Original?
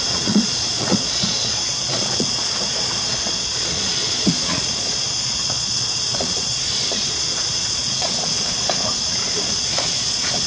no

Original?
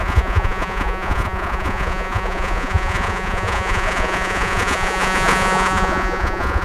no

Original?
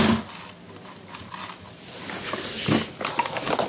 yes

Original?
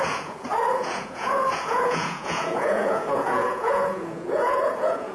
no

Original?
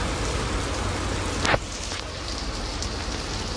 yes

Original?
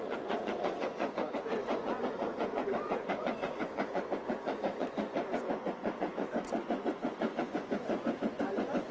no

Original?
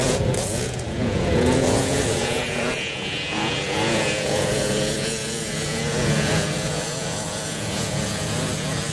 no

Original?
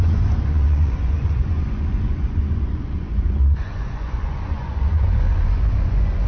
no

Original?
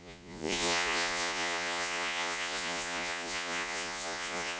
no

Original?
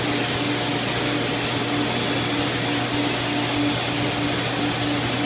yes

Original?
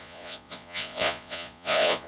no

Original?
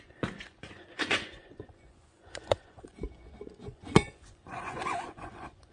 no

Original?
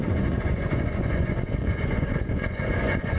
no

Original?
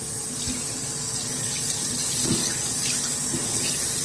yes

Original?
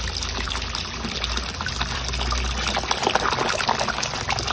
yes